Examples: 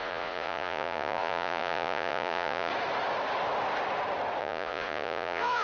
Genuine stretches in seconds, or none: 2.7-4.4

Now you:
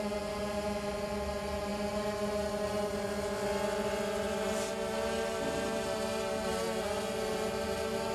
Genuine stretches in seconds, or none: 0.0-8.1

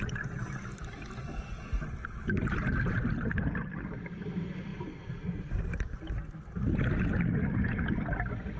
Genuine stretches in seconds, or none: 0.0-8.6

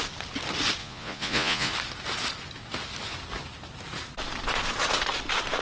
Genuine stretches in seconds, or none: 0.0-0.8; 1.7-5.6

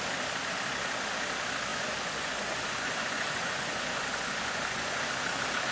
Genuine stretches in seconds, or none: 0.0-1.7; 5.1-5.7

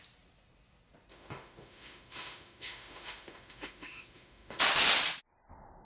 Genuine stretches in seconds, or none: 0.0-1.1; 4.6-5.8

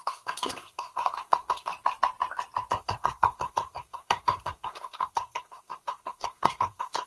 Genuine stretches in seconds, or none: 1.7-2.7

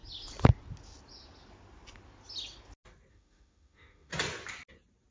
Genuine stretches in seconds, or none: 0.0-3.1; 4.1-5.1